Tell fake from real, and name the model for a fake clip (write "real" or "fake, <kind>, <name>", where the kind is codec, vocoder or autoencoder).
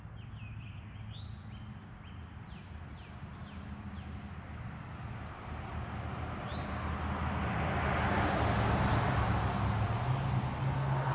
real